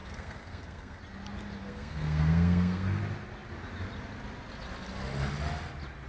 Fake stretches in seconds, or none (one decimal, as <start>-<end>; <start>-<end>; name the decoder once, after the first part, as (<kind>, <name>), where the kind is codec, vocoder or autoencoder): 0.0-1.0 (codec, SNAC); 1.6-3.0